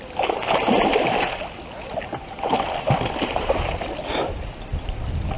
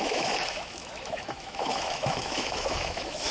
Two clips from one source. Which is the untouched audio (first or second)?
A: first